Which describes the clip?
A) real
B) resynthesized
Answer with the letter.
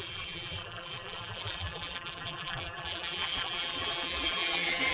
B